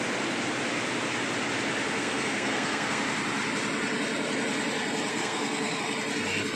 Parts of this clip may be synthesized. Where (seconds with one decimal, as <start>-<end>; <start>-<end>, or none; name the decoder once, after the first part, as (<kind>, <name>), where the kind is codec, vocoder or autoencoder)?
2.0-3.0 (codec, SNAC); 5.1-5.8